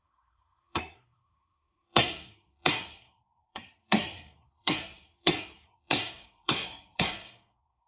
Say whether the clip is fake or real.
fake